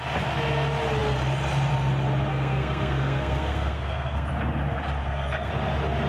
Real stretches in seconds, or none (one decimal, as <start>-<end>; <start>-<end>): 0.0-2.3; 4.3-5.0; 5.5-6.1